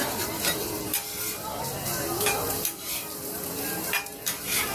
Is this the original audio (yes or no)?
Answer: no